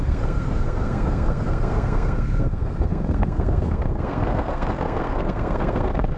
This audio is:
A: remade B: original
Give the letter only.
A